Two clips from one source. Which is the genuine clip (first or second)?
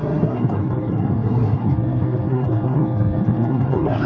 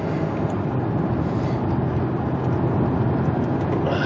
second